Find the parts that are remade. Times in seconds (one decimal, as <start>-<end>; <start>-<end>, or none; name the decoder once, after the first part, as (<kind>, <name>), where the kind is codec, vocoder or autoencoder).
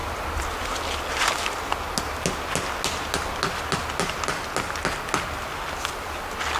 none